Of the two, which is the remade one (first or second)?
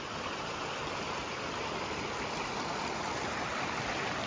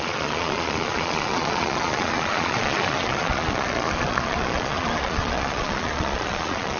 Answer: second